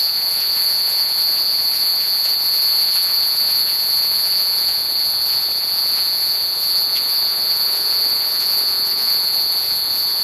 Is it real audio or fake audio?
fake